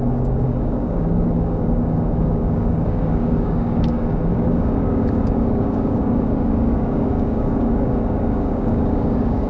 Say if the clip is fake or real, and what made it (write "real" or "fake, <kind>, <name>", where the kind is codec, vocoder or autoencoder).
fake, codec, DAC